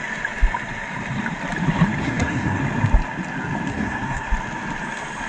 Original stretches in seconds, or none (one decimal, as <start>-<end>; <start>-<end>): 0.0-2.0; 2.6-3.7; 4.3-5.3